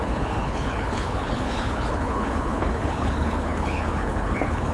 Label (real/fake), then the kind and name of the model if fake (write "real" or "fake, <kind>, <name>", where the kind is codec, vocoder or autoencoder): fake, codec, HILCodec